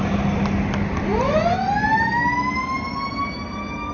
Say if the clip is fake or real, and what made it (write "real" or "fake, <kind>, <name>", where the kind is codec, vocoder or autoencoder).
real